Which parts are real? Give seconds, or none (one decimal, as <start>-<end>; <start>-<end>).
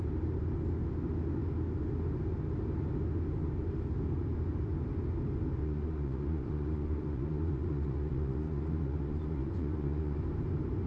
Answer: 0.0-5.6; 10.2-10.9